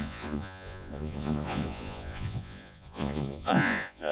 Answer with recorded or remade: remade